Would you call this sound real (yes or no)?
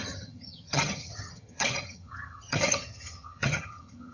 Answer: no